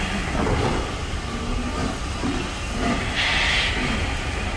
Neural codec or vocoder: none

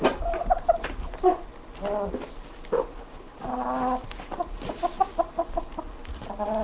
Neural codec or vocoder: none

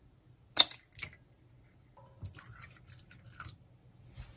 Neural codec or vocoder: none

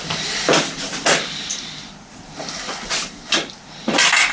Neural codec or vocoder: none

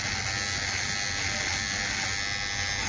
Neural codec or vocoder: none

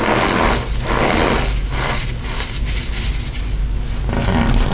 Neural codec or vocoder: none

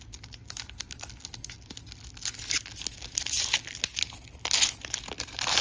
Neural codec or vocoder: none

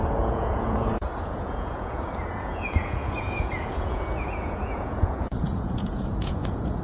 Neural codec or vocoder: vocoder, Vocos